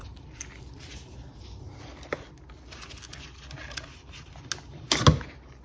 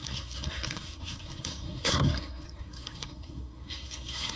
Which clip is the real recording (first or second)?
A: first